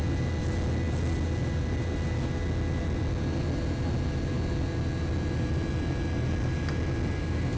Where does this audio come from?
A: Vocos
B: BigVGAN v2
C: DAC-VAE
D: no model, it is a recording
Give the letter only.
D